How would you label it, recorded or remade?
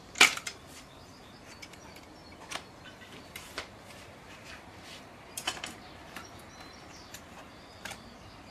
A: remade